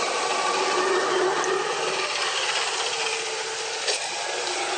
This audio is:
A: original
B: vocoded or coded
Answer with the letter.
A